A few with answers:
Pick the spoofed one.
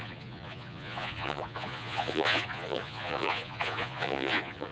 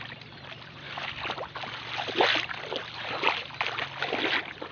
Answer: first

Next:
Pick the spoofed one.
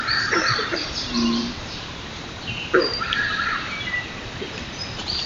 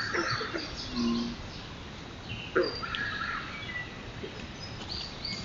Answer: first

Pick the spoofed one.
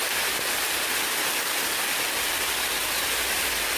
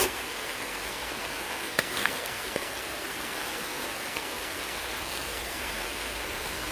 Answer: second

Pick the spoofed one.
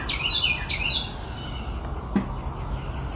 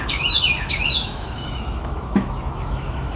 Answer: second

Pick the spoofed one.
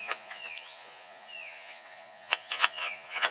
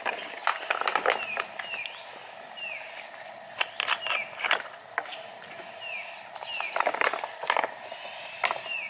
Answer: first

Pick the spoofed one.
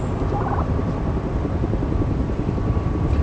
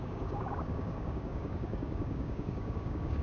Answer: second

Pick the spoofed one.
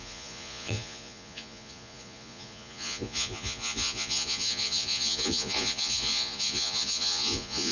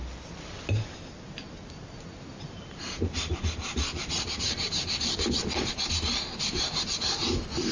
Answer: first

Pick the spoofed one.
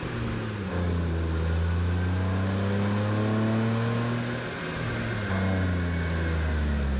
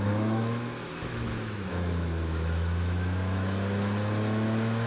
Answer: second